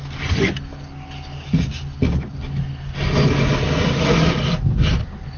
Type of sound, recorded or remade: recorded